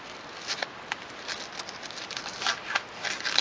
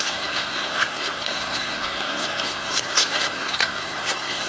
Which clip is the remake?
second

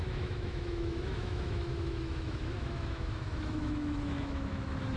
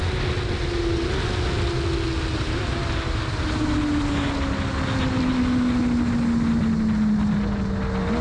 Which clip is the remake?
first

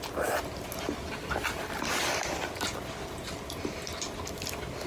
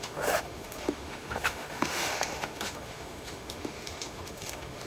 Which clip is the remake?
second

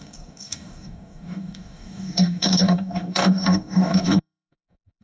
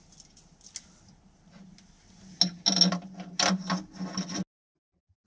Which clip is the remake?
first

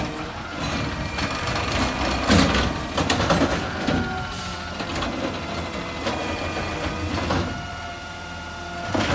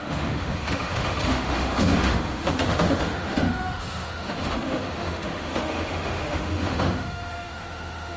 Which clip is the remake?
second